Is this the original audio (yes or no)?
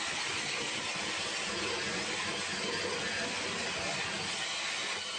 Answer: yes